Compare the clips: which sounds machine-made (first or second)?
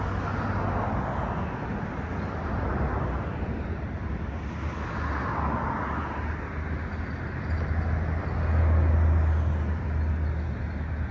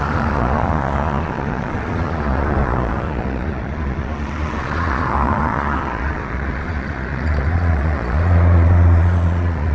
second